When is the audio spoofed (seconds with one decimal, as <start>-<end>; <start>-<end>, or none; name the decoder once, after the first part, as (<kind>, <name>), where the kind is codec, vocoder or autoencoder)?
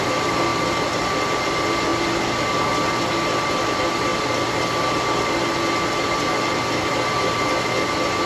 none